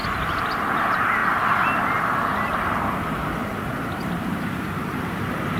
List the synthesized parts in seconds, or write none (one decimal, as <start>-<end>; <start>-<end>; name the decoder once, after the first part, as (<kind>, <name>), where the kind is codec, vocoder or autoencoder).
3.4-5.1 (vocoder, BigVGAN v2)